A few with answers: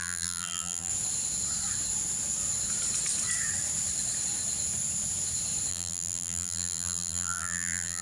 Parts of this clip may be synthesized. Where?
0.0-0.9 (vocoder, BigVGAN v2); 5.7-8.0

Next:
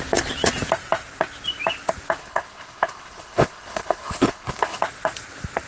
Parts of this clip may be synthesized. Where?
2.2-4.8 (codec, HILCodec)

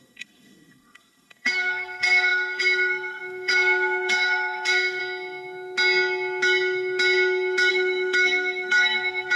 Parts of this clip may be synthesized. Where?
0.0-5.0 (codec, SNAC); 7.7-9.4